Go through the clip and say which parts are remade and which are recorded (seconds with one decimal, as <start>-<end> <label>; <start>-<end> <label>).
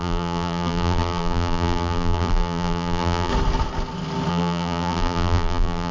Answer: 0.0-3.3 remade; 3.3-4.3 recorded; 4.3-5.9 remade